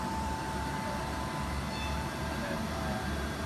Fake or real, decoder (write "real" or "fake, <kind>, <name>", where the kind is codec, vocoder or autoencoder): fake, vocoder, BigVGAN v2